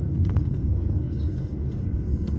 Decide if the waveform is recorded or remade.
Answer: remade